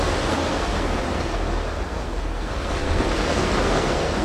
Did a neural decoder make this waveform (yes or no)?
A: yes